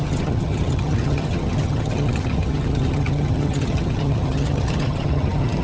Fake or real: fake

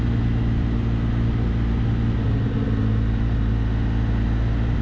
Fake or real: real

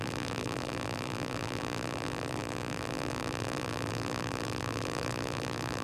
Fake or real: fake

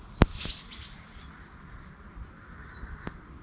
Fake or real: real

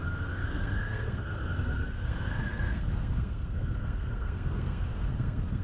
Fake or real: fake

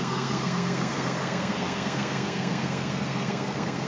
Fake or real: fake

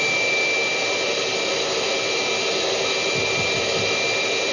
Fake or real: real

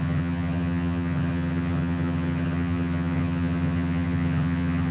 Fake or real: fake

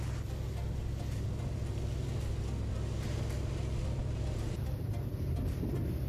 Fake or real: real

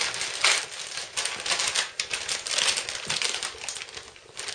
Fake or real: real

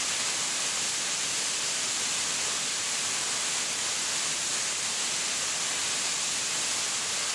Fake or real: real